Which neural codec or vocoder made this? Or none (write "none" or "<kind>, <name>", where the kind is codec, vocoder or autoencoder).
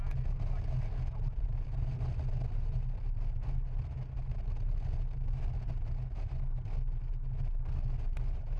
none